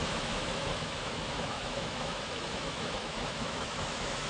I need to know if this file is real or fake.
fake